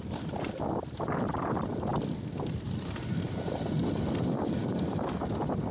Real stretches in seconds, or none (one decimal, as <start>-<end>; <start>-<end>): 1.9-5.3